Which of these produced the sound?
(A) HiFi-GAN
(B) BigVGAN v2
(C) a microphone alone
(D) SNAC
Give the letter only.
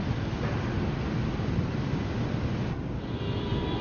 B